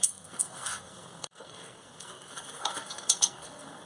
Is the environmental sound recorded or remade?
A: remade